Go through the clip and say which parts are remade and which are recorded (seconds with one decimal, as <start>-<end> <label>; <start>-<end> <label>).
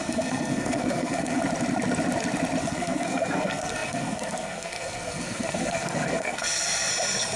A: 0.0-1.4 remade; 1.4-2.6 recorded; 2.6-6.9 remade; 6.9-7.4 recorded